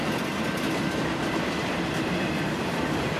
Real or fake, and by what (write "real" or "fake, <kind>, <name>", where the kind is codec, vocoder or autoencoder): real